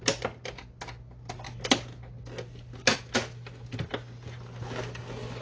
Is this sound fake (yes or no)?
no